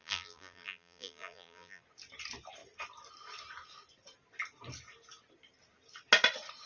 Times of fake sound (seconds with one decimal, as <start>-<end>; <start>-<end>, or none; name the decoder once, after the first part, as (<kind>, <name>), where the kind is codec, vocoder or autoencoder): 0.0-1.8 (vocoder, BigVGAN v2)